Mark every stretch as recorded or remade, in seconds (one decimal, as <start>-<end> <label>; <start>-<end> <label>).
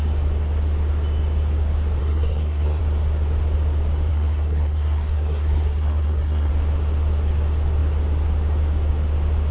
0.0-2.0 recorded; 2.0-2.8 remade; 2.8-4.1 recorded; 4.1-6.5 remade; 6.5-9.5 recorded